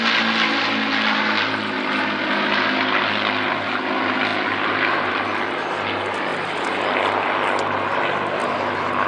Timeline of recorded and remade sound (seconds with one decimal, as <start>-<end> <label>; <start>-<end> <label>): 0.0-9.1 recorded